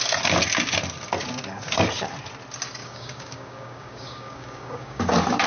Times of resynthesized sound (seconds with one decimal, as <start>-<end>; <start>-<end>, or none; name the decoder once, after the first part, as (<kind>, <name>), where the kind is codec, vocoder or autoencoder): 2.8-5.0 (codec, DAC)